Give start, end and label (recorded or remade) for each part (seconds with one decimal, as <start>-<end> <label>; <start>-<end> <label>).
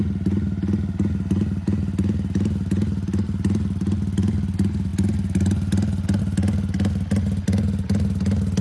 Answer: 0.0-8.6 recorded